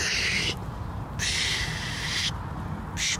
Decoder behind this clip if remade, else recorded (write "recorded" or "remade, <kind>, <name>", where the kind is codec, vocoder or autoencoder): recorded